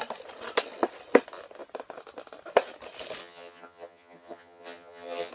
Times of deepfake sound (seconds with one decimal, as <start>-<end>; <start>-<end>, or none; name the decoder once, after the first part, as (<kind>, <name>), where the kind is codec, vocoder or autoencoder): 3.2-5.3 (vocoder, HiFi-GAN)